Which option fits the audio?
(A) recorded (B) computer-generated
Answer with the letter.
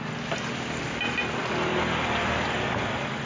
A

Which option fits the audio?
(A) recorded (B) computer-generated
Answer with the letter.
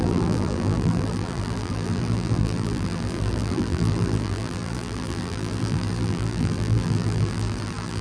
B